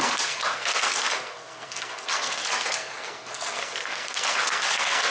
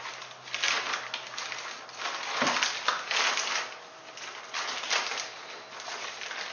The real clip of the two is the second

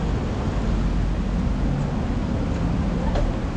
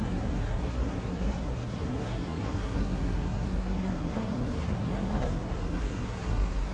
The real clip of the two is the first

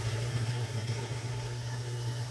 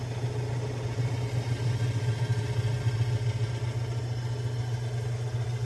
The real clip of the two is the second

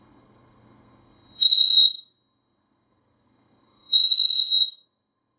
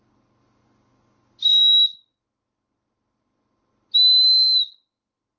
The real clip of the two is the second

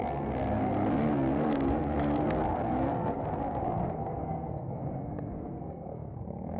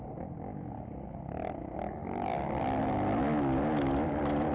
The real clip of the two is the second